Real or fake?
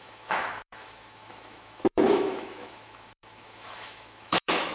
fake